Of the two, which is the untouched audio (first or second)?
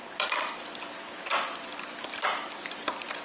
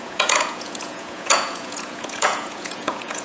first